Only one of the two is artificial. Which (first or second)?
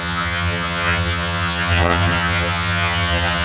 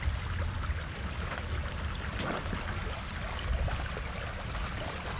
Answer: first